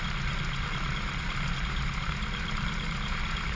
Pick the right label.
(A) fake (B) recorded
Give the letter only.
B